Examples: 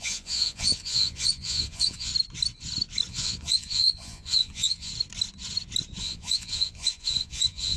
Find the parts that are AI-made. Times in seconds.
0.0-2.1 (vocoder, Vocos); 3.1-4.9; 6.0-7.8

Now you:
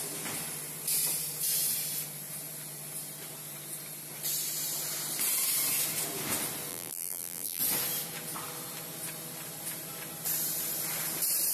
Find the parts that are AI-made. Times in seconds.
6.7-7.6 (vocoder, BigVGAN v2)